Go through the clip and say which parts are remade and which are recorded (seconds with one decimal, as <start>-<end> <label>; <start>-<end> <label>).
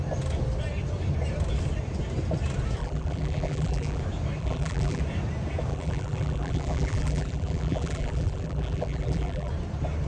0.0-2.8 recorded; 2.8-4.0 remade; 4.0-4.4 recorded; 4.4-5.0 remade; 5.0-5.7 recorded; 5.7-9.5 remade; 9.5-10.1 recorded